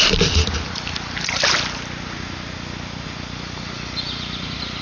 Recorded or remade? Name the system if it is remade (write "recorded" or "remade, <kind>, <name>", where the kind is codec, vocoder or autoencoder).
recorded